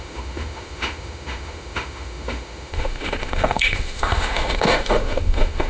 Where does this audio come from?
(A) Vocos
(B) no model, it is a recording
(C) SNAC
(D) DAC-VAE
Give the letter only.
D